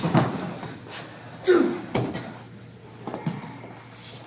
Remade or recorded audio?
recorded